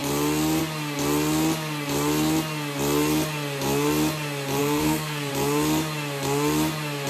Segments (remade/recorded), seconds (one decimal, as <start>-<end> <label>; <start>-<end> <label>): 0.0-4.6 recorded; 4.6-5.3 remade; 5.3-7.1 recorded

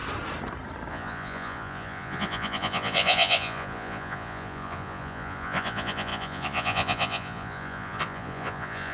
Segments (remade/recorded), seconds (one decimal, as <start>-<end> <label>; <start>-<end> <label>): 0.0-0.9 recorded; 0.9-8.9 remade

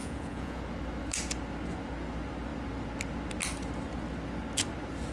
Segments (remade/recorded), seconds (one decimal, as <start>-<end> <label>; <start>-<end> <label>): 0.0-0.6 remade; 0.6-5.1 recorded

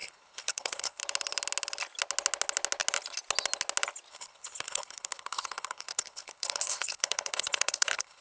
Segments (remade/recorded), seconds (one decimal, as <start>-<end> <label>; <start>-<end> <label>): 0.0-1.0 remade; 1.0-4.1 recorded; 4.1-8.2 remade